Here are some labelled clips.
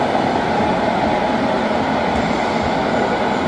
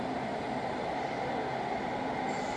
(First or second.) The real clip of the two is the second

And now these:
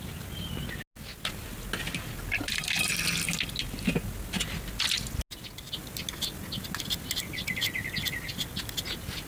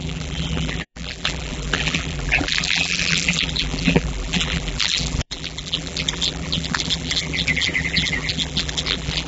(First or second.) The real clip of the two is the first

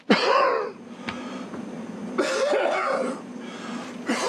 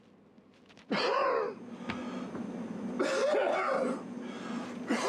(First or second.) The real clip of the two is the second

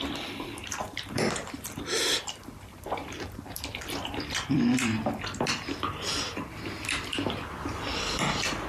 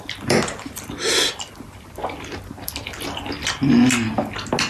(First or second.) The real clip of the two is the second